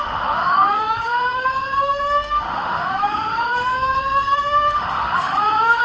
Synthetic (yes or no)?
yes